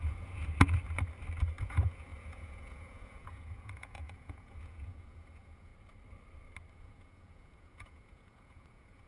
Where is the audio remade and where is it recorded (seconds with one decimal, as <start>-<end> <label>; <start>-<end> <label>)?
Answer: 0.0-0.4 remade; 0.4-1.6 recorded; 1.6-5.7 remade; 5.7-6.7 recorded; 6.7-9.1 remade